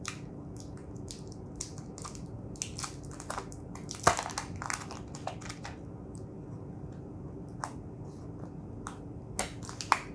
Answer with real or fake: real